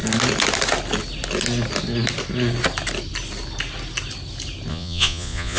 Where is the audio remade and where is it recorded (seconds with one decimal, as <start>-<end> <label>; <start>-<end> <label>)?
0.0-4.7 recorded; 4.7-5.6 remade